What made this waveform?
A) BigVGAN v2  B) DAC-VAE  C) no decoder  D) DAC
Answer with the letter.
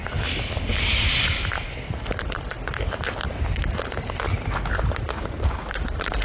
C